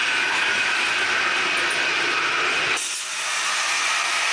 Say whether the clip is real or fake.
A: real